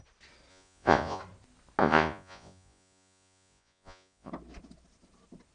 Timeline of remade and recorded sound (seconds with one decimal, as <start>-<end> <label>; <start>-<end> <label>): 0.0-0.5 recorded; 0.5-1.2 remade; 1.2-1.8 recorded; 1.8-4.3 remade; 4.3-5.5 recorded